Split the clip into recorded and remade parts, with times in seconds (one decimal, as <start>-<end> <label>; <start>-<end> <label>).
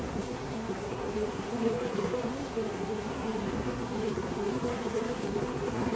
0.0-6.0 remade